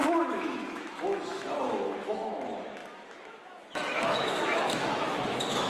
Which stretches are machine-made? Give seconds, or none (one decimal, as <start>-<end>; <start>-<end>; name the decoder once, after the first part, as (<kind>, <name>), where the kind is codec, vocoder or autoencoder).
0.0-5.7 (autoencoder, DAC-VAE)